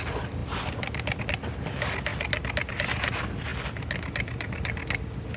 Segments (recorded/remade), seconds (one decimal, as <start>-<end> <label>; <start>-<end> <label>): 0.0-5.4 recorded